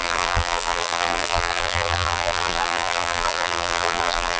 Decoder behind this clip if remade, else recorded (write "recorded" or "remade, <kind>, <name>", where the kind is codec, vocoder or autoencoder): remade, vocoder, BigVGAN v2